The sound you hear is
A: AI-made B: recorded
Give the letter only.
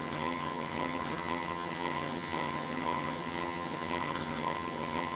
A